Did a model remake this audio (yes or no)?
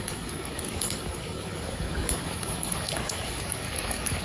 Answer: yes